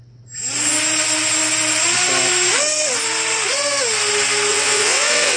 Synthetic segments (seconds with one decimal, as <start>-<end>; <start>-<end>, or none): 4.5-5.4